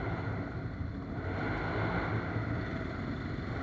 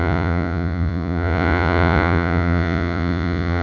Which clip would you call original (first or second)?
first